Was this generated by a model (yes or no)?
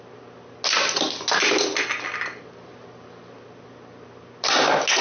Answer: no